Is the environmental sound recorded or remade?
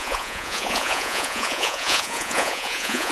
remade